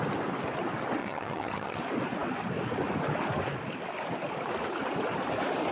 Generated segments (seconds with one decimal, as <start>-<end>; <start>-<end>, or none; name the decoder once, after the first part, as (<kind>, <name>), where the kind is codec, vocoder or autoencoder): 1.0-1.8 (vocoder, HiFi-GAN)